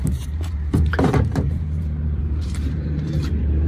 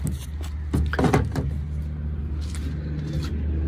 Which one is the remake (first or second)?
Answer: first